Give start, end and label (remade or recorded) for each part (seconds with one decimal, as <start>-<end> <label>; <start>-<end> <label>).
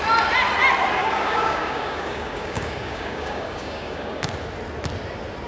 0.0-1.0 recorded; 1.0-4.3 remade; 4.3-5.5 recorded